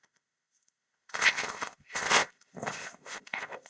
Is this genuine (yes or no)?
no